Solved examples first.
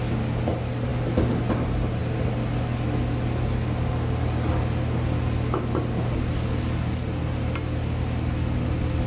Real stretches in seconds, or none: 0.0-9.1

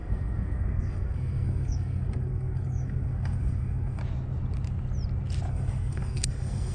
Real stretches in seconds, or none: 4.0-5.5

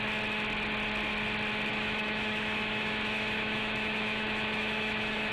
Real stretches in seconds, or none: 0.0-1.7

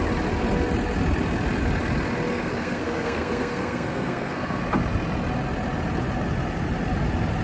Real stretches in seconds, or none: 0.0-2.3; 4.6-7.4